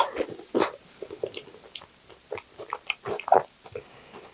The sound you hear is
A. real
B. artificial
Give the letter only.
A